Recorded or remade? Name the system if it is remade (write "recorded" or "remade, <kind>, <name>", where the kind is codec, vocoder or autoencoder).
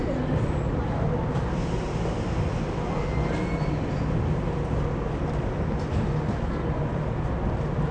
recorded